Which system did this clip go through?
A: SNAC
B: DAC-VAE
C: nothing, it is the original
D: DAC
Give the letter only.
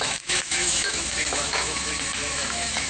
B